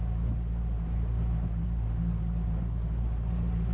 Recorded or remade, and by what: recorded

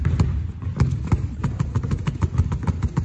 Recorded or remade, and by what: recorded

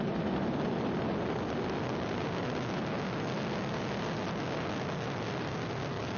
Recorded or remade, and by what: recorded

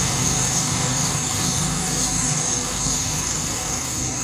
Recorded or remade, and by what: remade, codec, DAC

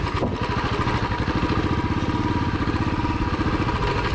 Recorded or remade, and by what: recorded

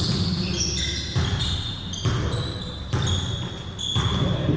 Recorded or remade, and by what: recorded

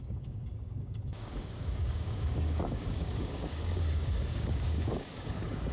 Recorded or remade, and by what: remade, codec, DAC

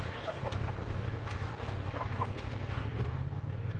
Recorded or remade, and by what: remade, codec, DAC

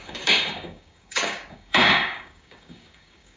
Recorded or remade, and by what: remade, codec, DAC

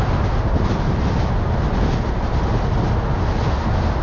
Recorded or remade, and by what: recorded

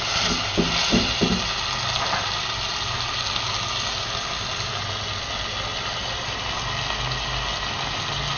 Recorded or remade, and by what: recorded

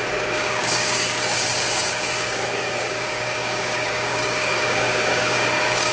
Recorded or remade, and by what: remade, codec, DAC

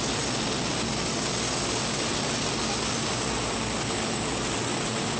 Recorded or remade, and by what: recorded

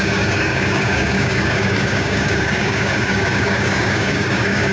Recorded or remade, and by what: remade, codec, DAC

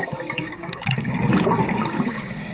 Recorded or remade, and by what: remade, codec, DAC